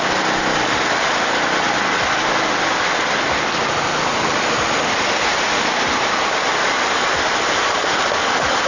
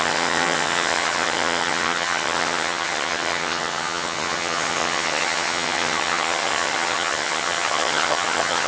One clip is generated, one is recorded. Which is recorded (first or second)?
first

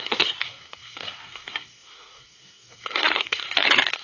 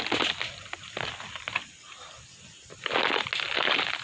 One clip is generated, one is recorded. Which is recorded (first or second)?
second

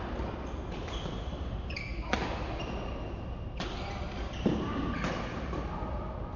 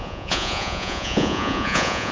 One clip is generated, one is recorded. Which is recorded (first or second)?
first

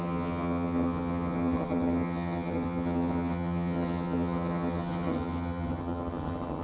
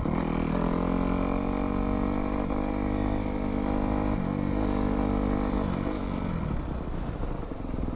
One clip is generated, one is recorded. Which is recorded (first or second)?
second